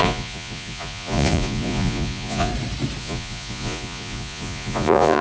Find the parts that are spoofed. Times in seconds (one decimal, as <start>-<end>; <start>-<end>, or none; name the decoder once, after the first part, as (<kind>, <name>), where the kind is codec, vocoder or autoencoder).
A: 0.0-2.5 (vocoder, Vocos); 3.0-5.2